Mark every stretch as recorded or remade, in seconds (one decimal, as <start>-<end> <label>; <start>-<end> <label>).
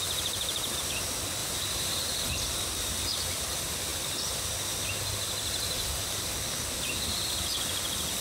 0.0-1.4 recorded; 1.4-2.3 remade; 2.3-8.2 recorded